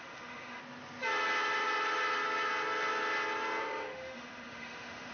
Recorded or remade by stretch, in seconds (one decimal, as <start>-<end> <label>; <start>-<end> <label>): 0.0-0.6 remade; 0.6-3.6 recorded; 3.6-5.1 remade